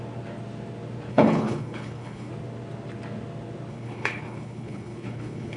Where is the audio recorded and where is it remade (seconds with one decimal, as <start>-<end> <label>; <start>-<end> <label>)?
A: 0.0-1.1 recorded; 1.1-2.3 remade; 2.3-3.7 recorded; 3.7-5.6 remade